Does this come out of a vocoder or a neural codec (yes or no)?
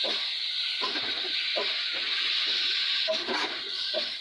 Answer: no